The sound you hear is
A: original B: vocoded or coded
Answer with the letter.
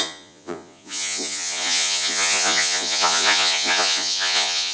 B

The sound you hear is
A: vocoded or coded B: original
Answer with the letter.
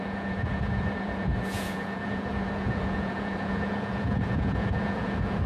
A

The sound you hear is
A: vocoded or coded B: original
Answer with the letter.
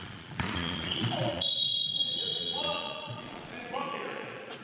A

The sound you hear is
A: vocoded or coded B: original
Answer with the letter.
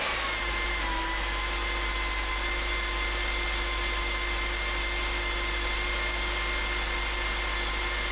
B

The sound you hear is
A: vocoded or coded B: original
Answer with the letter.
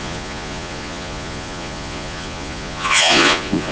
A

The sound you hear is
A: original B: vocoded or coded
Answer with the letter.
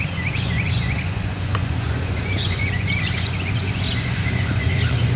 B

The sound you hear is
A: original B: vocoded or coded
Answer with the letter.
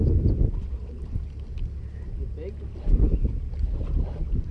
A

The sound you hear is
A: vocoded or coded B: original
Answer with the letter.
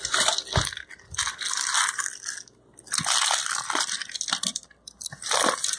B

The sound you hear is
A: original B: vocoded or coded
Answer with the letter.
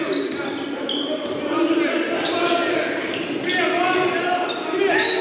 A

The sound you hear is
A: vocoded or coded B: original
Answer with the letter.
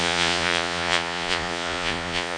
A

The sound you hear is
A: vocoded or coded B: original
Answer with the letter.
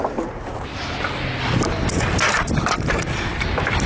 B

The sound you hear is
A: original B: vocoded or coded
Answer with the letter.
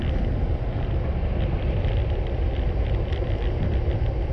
A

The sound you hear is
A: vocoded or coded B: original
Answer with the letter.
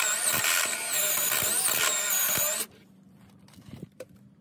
B